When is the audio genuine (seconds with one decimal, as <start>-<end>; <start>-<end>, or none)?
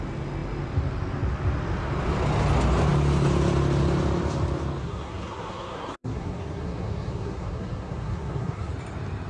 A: 0.0-4.8; 8.7-9.3